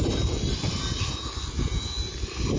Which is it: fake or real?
real